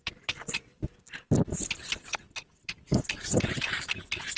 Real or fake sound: real